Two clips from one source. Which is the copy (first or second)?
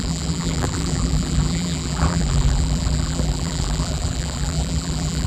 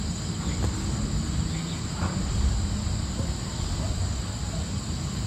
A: first